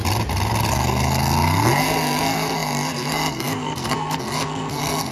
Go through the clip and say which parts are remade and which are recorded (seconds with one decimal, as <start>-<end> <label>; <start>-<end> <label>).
0.0-0.7 recorded; 0.7-5.1 remade